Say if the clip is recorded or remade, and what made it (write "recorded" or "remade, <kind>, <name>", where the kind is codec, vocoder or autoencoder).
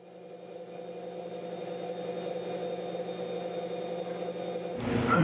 recorded